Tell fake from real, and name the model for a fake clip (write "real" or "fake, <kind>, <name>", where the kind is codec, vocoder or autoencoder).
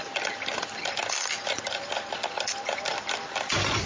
real